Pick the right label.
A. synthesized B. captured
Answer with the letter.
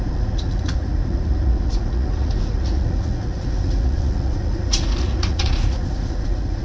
A